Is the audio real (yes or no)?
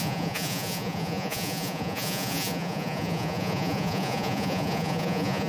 no